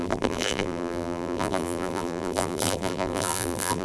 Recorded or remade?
remade